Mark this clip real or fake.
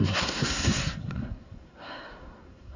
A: fake